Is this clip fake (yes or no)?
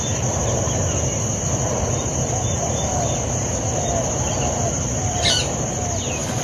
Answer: no